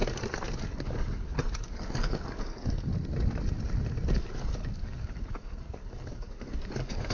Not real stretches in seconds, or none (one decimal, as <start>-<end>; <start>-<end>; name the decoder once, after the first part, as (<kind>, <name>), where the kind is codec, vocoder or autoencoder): 0.6-2.9 (codec, DAC); 4.1-7.1